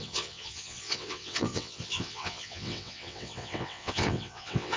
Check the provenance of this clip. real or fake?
fake